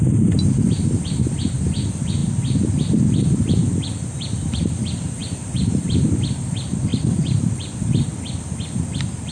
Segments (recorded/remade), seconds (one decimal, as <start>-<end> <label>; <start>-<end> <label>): 0.0-5.2 recorded; 5.2-6.0 remade; 6.0-6.9 recorded; 6.9-8.1 remade; 8.1-9.3 recorded